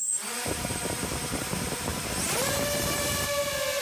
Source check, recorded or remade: recorded